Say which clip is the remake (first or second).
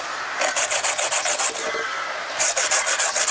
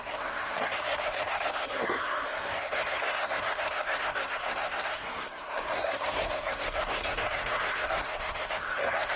second